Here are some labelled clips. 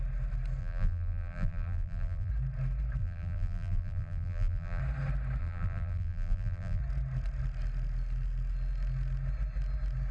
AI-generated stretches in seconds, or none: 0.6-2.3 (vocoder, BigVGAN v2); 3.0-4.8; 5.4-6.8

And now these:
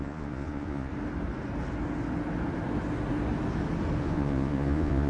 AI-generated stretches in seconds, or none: 0.0-0.9 (vocoder, Vocos); 4.0-5.1

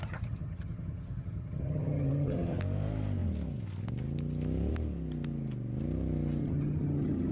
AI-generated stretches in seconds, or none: 0.0-2.6 (vocoder, HiFi-GAN); 6.4-7.3

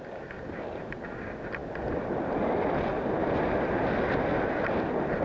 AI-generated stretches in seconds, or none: 3.2-3.9 (vocoder, BigVGAN v2)

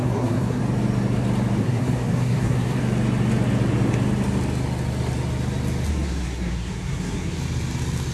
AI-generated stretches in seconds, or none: 0.0-0.6 (codec, SNAC); 1.6-2.8; 5.9-7.4